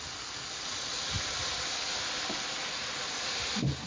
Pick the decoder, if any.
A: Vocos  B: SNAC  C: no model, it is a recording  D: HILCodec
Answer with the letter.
C